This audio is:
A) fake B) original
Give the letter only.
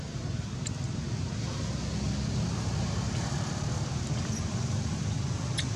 B